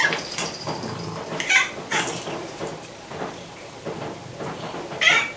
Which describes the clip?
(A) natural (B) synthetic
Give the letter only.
B